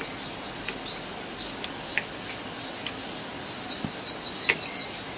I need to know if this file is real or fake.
real